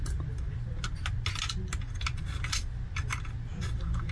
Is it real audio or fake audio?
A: real